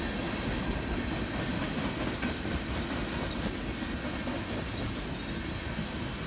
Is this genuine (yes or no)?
yes